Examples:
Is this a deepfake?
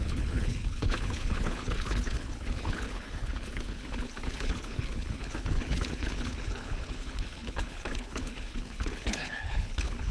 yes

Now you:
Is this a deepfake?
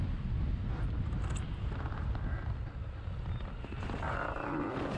no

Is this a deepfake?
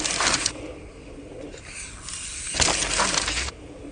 no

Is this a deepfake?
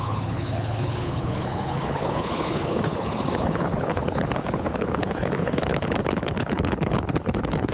yes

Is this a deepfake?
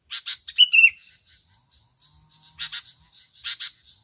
no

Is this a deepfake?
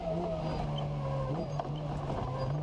no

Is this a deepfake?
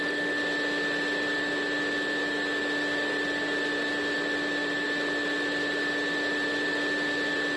no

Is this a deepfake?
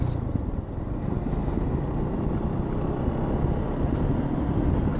no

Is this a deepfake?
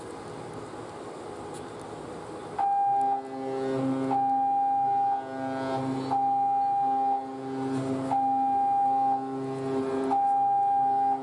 no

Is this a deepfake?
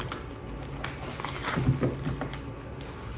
no